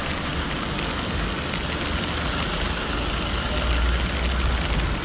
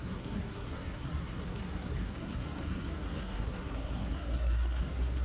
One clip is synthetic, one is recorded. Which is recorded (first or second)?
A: first